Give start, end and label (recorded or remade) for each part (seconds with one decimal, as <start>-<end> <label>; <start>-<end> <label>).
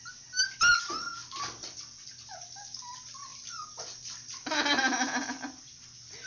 0.0-6.3 recorded